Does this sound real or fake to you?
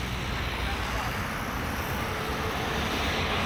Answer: real